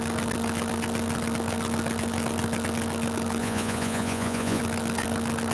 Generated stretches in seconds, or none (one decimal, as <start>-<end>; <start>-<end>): 3.4-4.6